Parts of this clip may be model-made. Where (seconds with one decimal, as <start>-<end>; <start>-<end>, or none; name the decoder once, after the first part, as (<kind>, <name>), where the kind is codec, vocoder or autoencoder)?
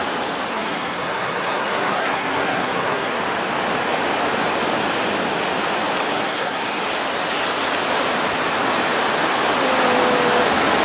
0.5-3.2 (codec, SNAC); 6.1-6.8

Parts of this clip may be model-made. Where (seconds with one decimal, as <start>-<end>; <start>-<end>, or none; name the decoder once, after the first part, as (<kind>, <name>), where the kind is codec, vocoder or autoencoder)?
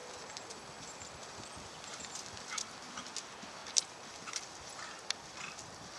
none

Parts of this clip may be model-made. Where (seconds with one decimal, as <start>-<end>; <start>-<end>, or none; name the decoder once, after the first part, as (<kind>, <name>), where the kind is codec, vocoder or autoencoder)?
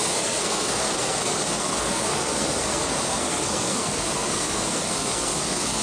0.0-5.8 (codec, SNAC)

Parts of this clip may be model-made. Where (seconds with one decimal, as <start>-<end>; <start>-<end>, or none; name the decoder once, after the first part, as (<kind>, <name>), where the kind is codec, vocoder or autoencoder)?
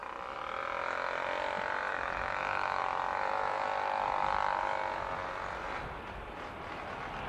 1.9-2.8 (autoencoder, DAC-VAE)